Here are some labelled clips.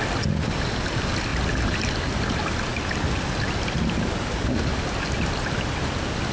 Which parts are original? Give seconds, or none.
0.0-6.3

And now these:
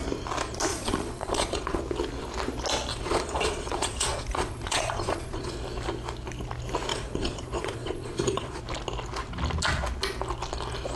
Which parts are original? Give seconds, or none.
0.0-0.7; 1.8-2.9; 5.5-6.9; 8.6-11.0

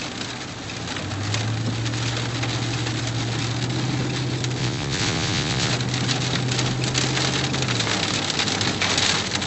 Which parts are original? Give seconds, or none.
0.0-4.6; 5.7-9.5

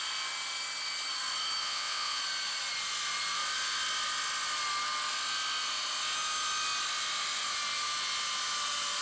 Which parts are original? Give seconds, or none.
0.0-1.6; 2.2-9.0